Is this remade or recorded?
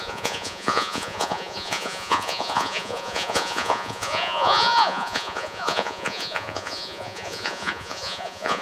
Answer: remade